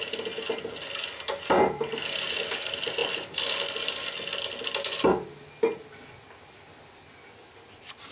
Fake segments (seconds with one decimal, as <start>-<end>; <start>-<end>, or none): none